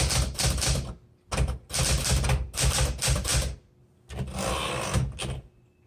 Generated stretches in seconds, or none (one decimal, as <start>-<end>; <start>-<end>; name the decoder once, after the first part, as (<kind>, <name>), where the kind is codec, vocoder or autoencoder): none